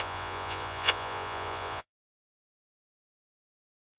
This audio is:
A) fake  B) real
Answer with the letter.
A